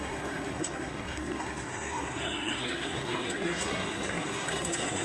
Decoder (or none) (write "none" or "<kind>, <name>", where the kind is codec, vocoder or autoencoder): codec, SNAC